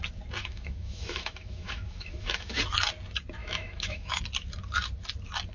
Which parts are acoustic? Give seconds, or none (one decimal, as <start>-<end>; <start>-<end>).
0.0-0.4; 2.6-3.4; 4.2-5.5